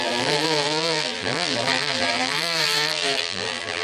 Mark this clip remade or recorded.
remade